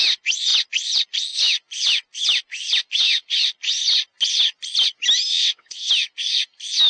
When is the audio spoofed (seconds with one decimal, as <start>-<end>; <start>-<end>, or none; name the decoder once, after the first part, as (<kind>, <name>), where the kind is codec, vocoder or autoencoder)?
5.3-5.9 (vocoder, WaveNeXt)

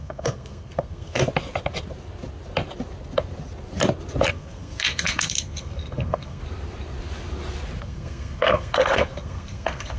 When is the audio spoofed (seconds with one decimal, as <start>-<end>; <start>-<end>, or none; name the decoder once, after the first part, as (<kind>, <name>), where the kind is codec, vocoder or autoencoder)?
0.0-1.2 (codec, SNAC); 4.3-6.4; 7.8-10.0

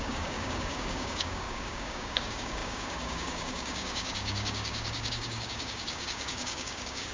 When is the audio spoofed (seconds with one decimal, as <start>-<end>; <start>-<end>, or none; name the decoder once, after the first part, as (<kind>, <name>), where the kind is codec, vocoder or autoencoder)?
0.0-7.1 (codec, DAC)

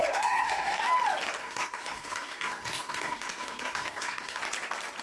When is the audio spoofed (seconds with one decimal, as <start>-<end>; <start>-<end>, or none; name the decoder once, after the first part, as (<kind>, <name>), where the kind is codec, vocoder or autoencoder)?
0.0-0.8 (codec, SNAC); 1.4-4.4

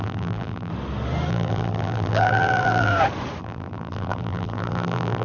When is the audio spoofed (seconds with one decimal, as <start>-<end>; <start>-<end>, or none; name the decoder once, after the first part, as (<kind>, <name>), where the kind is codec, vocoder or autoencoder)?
0.0-0.7 (vocoder, BigVGAN v2); 1.3-2.9; 3.4-5.2

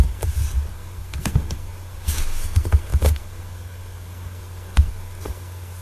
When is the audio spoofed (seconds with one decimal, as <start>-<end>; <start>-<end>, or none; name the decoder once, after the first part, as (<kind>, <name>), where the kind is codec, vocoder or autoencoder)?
0.0-5.8 (codec, SNAC)

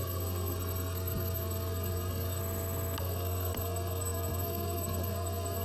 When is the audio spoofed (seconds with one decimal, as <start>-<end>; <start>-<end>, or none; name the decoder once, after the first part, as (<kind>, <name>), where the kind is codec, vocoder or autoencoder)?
0.0-2.4 (codec, SNAC); 3.0-5.6

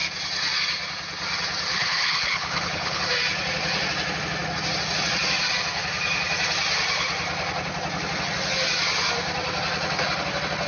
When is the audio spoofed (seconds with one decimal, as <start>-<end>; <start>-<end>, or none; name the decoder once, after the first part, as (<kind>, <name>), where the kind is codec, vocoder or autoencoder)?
1.7-3.0 (codec, HILCodec)